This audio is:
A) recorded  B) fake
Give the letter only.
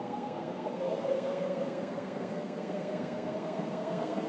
B